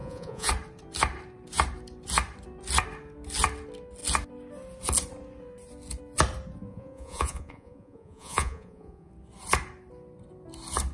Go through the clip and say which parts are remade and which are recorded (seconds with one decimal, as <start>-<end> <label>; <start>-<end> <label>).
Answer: 0.0-0.5 remade; 0.5-6.7 recorded; 6.7-9.1 remade; 9.1-10.9 recorded